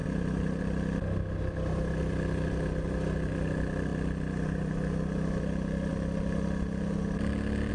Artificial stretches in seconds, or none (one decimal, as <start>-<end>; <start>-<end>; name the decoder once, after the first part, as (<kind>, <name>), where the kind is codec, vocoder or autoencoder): 0.0-0.6 (vocoder, BigVGAN v2)